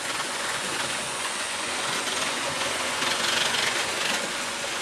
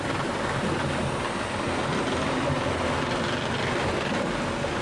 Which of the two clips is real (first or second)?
second